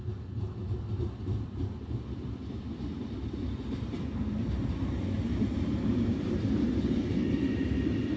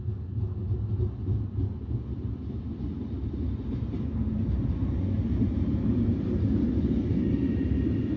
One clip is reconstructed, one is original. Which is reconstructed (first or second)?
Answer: first